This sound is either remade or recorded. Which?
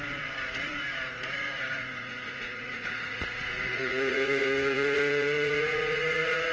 remade